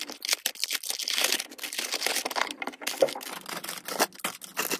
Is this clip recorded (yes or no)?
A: yes